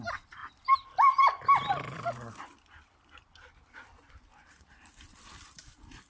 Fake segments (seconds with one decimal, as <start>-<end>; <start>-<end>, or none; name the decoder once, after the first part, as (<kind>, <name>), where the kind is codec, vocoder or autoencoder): 0.0-0.4 (vocoder, BigVGAN v2); 4.1-6.1